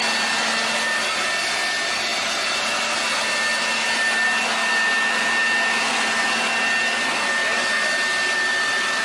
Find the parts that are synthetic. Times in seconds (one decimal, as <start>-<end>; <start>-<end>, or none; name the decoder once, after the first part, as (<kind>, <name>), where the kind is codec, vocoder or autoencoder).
none